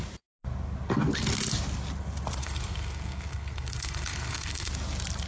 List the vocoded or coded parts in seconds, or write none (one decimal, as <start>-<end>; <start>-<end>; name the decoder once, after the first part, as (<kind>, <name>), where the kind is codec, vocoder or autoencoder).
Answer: 2.4-4.7 (codec, SNAC)